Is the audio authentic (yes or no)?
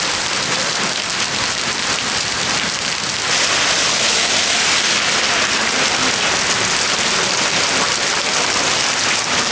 yes